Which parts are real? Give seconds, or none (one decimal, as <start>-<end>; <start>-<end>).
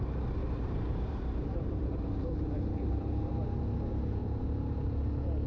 0.0-0.4; 3.3-4.2; 5.1-5.5